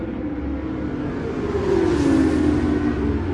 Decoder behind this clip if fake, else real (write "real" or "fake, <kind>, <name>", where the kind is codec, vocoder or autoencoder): real